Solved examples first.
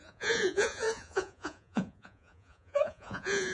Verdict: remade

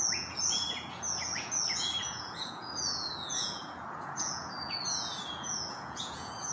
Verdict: remade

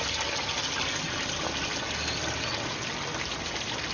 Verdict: recorded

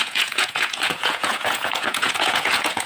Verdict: remade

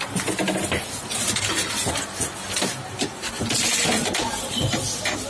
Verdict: recorded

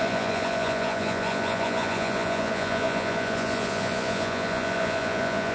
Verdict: remade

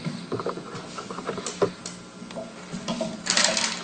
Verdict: recorded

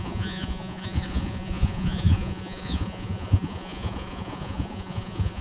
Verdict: remade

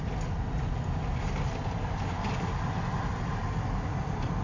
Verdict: recorded